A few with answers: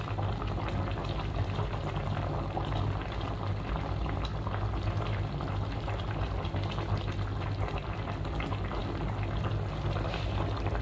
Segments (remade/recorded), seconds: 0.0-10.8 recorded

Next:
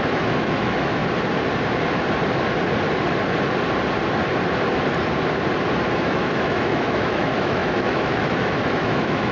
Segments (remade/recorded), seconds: 0.0-1.0 remade; 1.0-5.9 recorded; 5.9-9.3 remade

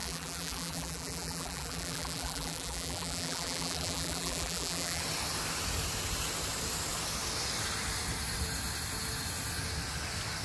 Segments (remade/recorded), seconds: 0.0-5.0 remade; 5.0-10.4 recorded